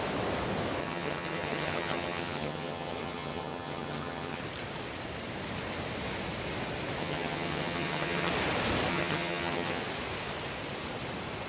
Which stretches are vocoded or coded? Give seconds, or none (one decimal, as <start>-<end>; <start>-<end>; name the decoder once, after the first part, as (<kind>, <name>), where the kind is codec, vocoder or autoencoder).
0.8-4.4 (vocoder, HiFi-GAN); 7.0-8.3; 8.9-9.8